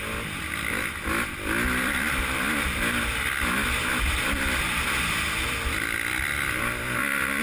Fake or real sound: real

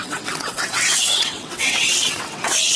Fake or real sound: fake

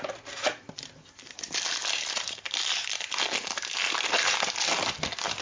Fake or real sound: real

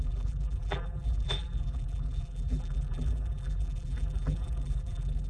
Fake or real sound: fake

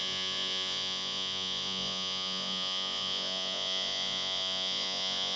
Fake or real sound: fake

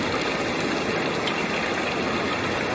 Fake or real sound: real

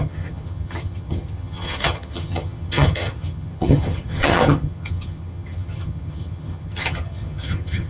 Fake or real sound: fake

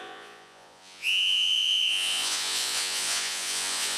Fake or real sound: fake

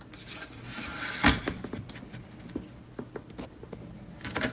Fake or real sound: real